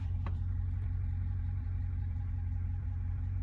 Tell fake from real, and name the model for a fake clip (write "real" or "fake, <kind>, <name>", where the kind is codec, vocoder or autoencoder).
fake, vocoder, BigVGAN v2